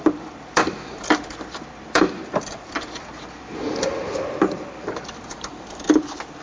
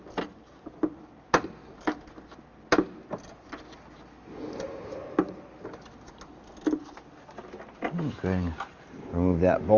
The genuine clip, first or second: second